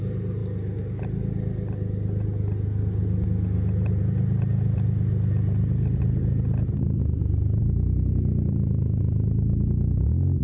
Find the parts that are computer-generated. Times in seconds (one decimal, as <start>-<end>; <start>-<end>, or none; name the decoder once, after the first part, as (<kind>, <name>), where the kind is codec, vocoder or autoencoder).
none